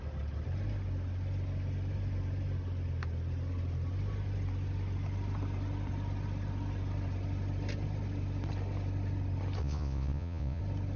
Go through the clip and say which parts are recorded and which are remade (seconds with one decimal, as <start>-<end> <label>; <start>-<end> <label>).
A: 0.0-9.6 recorded; 9.6-10.6 remade; 10.6-11.0 recorded